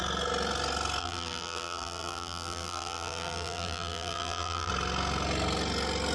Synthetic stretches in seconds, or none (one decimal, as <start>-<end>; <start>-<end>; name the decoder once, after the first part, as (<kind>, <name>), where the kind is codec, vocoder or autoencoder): 1.0-4.7 (vocoder, BigVGAN v2)